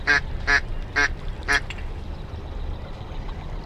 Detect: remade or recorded recorded